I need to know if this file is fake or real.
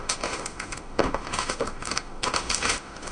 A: fake